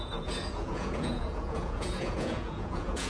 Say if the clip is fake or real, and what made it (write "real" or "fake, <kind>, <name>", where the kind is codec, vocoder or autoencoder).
fake, vocoder, Vocos